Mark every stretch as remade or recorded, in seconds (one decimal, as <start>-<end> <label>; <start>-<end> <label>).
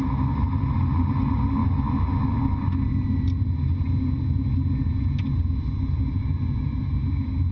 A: 0.0-7.5 recorded